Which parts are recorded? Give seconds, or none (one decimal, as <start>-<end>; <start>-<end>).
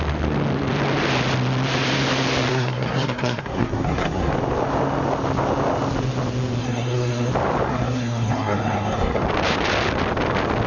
0.0-2.5; 4.3-6.6; 7.3-7.7; 9.2-10.7